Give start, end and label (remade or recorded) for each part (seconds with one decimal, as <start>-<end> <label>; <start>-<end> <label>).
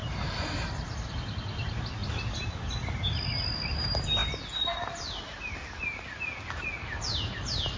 0.0-0.8 remade; 0.8-7.8 recorded